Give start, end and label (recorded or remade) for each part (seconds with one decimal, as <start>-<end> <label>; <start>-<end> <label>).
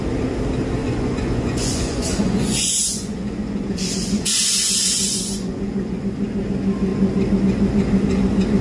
0.0-0.8 recorded; 0.8-6.0 remade; 6.0-8.6 recorded